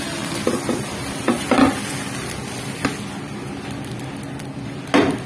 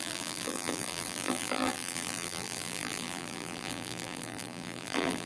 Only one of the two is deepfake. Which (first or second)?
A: second